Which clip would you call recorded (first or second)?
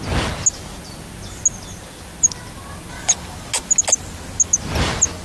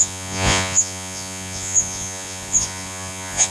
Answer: first